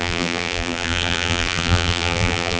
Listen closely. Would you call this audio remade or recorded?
remade